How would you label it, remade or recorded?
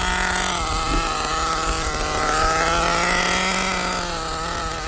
recorded